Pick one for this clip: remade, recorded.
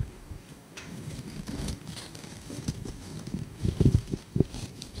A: remade